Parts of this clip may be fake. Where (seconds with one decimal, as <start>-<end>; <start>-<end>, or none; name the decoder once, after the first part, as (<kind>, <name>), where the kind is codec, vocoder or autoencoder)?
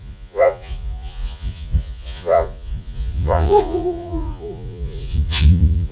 0.0-5.9 (vocoder, Vocos)